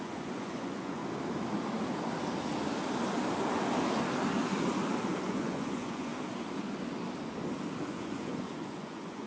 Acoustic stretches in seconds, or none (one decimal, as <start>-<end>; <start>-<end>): 1.0-5.2; 6.1-7.8

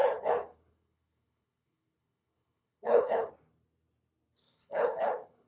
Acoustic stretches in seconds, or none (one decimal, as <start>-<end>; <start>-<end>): 3.3-4.4

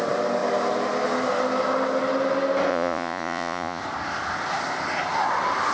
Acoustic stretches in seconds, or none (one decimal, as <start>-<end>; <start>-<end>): 0.0-2.7; 3.8-5.7